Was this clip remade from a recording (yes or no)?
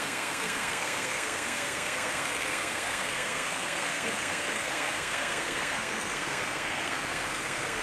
yes